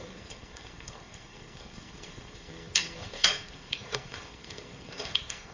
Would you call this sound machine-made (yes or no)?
yes